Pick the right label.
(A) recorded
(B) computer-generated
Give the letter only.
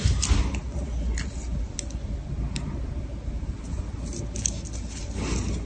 A